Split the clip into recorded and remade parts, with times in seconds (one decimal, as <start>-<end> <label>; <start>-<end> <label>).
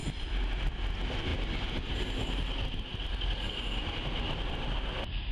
0.0-5.3 recorded